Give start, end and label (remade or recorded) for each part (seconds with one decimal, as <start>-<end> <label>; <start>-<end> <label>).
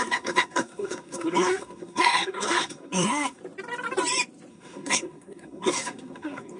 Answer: 0.0-3.4 remade; 3.4-4.5 recorded; 4.5-6.6 remade